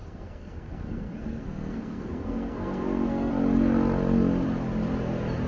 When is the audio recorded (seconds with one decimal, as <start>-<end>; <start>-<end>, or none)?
3.3-5.5